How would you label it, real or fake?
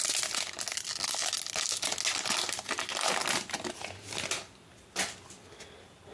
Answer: real